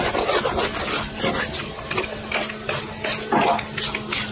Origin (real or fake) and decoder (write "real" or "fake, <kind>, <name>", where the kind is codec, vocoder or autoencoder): real